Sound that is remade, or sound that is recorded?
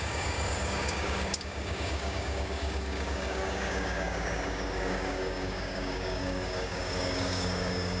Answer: remade